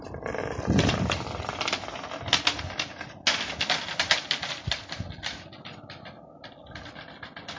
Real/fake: real